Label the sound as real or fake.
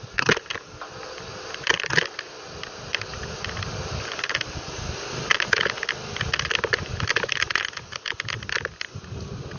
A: real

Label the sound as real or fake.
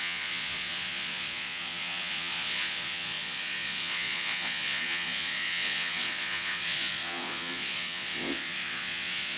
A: fake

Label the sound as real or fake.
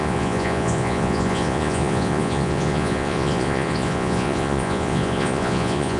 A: fake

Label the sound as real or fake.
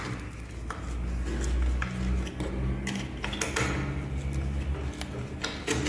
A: real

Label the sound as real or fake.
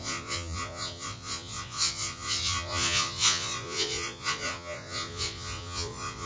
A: fake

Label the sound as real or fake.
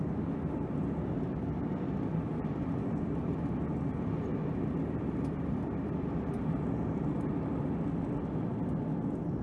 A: real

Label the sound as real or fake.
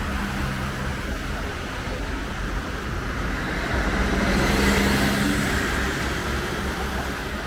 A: real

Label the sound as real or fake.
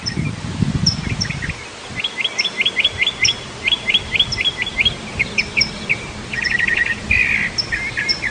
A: real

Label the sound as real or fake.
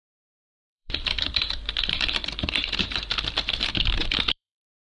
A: fake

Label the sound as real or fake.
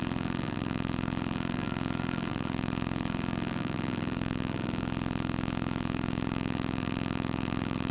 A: fake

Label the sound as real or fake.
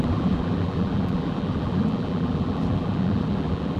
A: fake